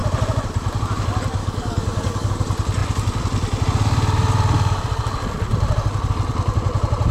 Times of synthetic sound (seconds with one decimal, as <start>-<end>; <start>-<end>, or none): 1.4-2.3